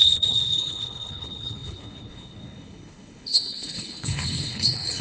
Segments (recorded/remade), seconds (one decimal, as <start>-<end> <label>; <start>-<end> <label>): 0.0-5.0 remade